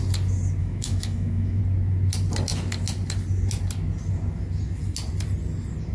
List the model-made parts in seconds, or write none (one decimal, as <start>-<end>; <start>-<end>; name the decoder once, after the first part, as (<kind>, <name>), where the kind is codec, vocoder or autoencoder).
0.6-1.6 (autoencoder, DAC-VAE)